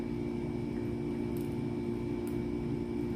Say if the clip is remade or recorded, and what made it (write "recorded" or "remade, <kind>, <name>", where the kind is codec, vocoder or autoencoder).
recorded